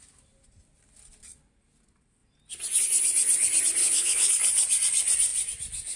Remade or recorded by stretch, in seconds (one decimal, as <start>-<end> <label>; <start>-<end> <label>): 0.0-3.8 recorded; 3.8-4.3 remade; 4.3-6.0 recorded